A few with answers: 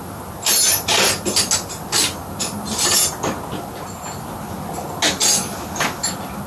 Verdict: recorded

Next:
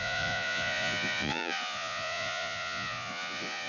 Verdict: remade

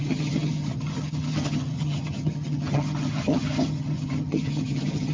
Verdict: remade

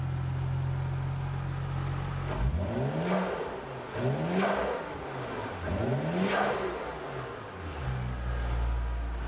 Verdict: recorded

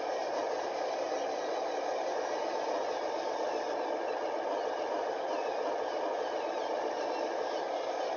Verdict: recorded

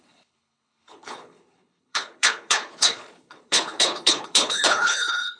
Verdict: remade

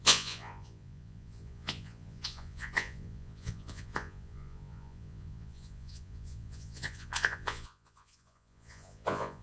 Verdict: remade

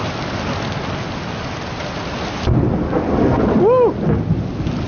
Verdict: recorded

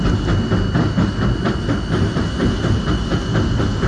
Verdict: recorded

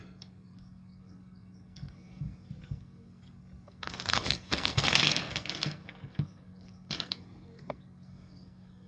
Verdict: remade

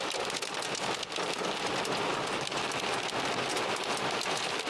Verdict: recorded